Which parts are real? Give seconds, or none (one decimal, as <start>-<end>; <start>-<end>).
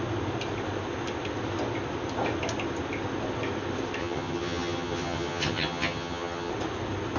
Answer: 0.0-4.0; 6.5-7.2